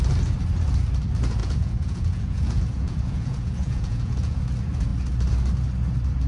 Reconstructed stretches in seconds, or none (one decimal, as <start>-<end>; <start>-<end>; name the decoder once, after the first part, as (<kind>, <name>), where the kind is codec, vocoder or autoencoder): 1.4-4.4 (vocoder, Vocos)